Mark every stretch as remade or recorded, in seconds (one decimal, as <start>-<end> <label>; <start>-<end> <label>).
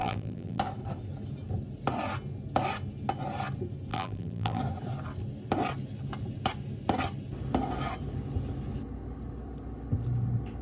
0.0-0.6 remade; 0.6-3.9 recorded; 3.9-4.6 remade; 4.6-10.6 recorded